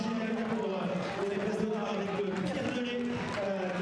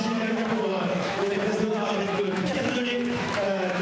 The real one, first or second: first